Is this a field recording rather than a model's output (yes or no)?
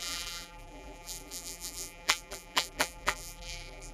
no